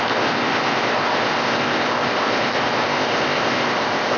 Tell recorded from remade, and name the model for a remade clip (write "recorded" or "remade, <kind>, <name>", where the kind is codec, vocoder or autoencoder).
remade, codec, ZipCodec